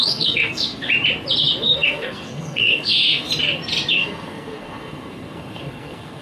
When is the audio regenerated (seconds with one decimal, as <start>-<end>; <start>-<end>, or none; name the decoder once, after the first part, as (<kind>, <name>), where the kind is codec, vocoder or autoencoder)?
0.0-0.9 (codec, SNAC); 1.6-3.3; 3.9-6.2